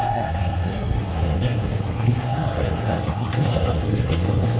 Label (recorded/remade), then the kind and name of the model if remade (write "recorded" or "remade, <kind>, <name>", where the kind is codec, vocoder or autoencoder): remade, codec, SNAC